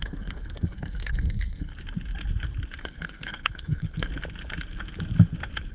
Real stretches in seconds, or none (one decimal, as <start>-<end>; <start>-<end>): 1.7-2.8; 4.1-5.7